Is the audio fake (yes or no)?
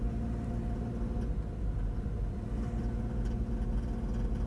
no